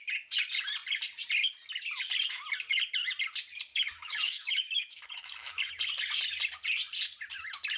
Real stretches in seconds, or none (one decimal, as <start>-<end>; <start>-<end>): 0.0-3.7; 5.7-7.8